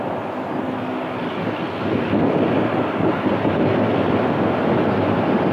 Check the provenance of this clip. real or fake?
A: real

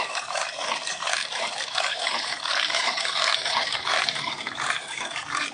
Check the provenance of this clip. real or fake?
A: fake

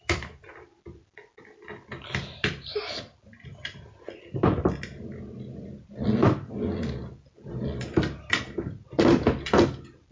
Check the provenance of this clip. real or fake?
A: real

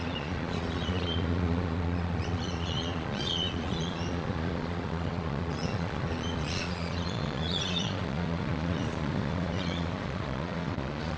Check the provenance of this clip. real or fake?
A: fake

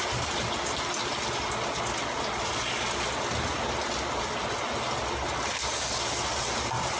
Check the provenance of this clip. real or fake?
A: real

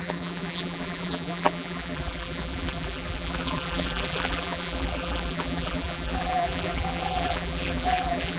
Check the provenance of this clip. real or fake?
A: fake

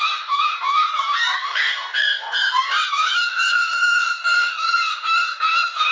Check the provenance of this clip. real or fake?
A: fake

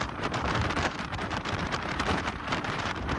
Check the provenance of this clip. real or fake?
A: fake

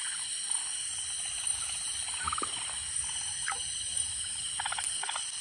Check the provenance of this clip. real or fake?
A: real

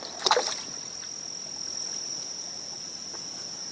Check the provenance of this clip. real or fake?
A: real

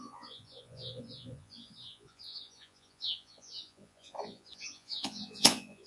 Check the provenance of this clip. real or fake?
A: fake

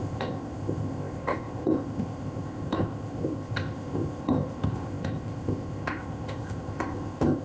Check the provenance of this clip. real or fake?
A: fake